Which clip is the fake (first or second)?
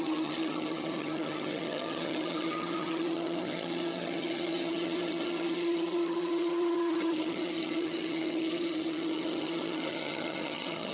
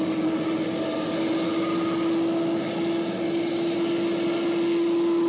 first